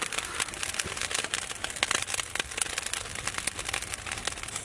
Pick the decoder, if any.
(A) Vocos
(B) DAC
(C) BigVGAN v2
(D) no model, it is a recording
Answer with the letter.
D